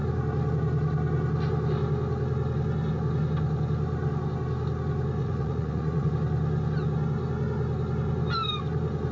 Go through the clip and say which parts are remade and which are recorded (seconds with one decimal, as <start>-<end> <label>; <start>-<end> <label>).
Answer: 0.0-5.2 recorded; 5.2-6.1 remade; 6.1-9.1 recorded